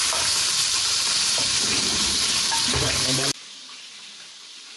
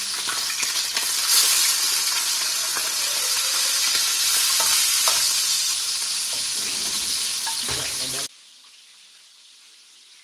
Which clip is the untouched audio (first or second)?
second